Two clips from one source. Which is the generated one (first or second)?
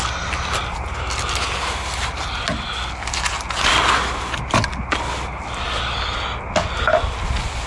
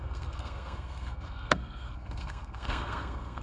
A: second